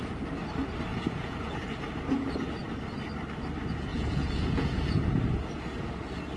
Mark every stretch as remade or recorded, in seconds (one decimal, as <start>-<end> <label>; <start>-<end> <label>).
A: 0.0-0.9 recorded; 0.9-1.6 remade; 1.6-3.9 recorded; 3.9-5.1 remade; 5.1-6.4 recorded